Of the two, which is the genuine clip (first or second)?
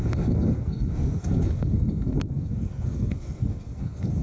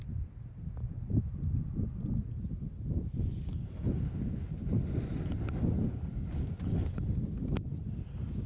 second